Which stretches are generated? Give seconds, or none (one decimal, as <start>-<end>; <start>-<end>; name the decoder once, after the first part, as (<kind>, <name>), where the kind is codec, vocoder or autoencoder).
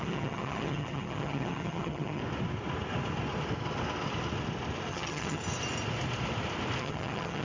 0.0-2.2 (vocoder, HiFi-GAN); 4.9-5.4; 6.8-7.4